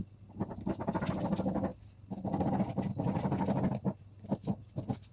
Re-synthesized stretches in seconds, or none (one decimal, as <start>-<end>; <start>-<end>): none